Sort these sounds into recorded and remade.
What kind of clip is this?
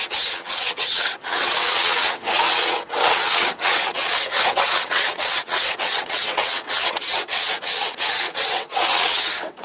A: remade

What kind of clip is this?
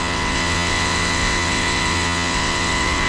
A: remade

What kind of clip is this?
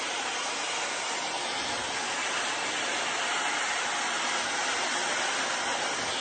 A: recorded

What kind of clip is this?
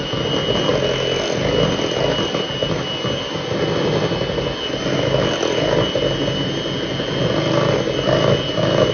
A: recorded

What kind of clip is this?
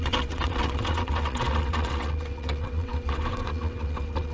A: remade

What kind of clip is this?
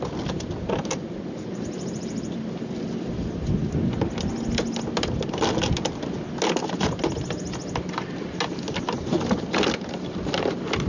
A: recorded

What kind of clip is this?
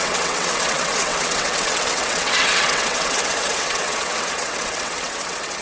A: remade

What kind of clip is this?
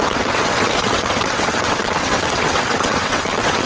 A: remade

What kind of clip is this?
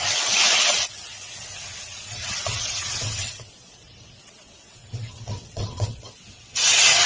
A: remade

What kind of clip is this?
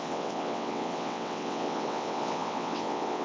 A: remade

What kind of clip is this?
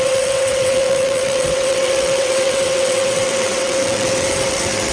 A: remade